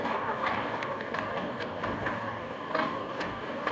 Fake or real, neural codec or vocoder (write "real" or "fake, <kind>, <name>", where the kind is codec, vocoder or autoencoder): fake, codec, DAC